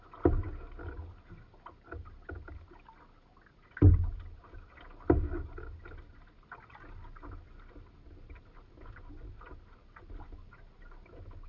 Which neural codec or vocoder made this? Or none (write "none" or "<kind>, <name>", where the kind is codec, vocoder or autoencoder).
none